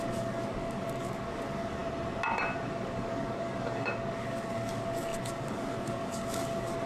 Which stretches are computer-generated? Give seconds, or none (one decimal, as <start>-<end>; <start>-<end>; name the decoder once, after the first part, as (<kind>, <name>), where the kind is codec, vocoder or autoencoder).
0.0-1.8 (codec, DAC); 2.7-6.9